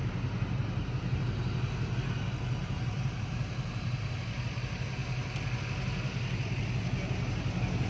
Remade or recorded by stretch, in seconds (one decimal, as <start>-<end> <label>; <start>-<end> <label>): 0.0-1.2 remade; 1.2-2.6 recorded; 2.6-4.3 remade; 4.3-7.9 recorded